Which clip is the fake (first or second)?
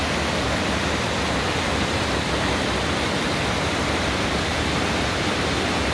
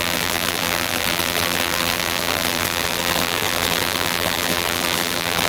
second